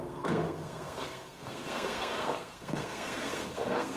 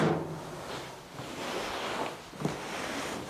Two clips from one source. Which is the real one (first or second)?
second